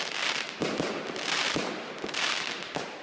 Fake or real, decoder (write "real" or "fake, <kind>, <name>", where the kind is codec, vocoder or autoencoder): fake, vocoder, BigVGAN v2